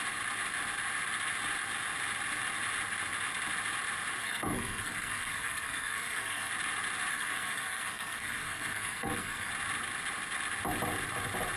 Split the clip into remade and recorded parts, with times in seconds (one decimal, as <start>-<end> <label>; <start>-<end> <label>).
0.0-4.2 recorded; 4.2-6.5 remade; 6.5-7.1 recorded; 7.1-9.5 remade; 9.5-11.6 recorded